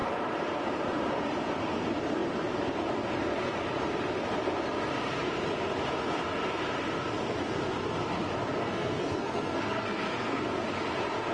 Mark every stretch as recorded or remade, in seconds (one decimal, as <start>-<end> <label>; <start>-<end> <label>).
0.0-8.6 recorded; 8.6-10.5 remade; 10.5-11.3 recorded